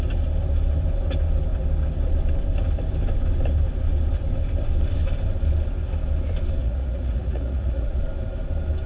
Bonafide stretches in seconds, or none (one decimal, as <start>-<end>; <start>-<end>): 0.0-6.6; 8.0-8.9